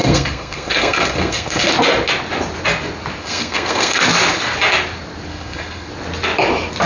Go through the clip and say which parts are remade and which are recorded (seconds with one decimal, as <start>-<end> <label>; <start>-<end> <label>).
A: 0.0-1.7 remade; 1.7-3.2 recorded; 3.2-4.0 remade; 4.0-5.3 recorded; 5.3-5.9 remade; 5.9-6.9 recorded